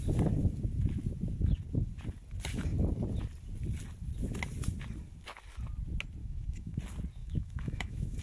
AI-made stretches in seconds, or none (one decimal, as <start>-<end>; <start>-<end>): 6.2-6.8; 7.2-8.2